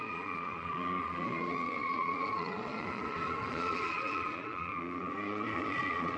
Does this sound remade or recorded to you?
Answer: remade